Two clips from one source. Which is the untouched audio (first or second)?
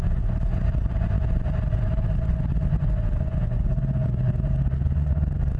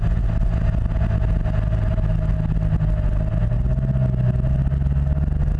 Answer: second